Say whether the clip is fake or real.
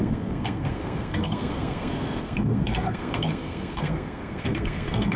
fake